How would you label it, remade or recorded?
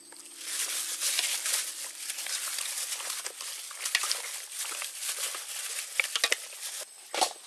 recorded